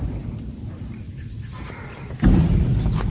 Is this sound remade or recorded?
recorded